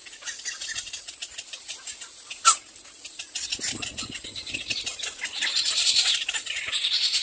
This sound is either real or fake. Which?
real